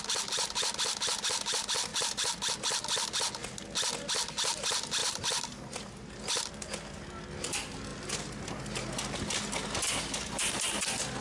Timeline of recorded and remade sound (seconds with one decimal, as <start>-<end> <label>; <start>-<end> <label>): 0.0-1.9 recorded; 1.9-2.5 remade; 2.5-5.0 recorded; 5.0-6.4 remade; 6.4-11.2 recorded